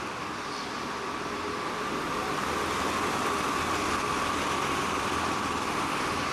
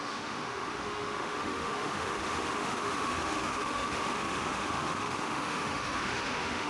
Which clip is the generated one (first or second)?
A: second